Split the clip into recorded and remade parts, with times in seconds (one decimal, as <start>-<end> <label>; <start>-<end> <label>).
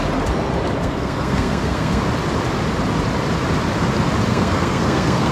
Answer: 0.0-0.8 recorded; 0.8-2.0 remade; 2.0-4.3 recorded; 4.3-5.3 remade